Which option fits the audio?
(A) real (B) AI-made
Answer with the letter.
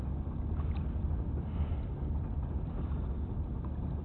A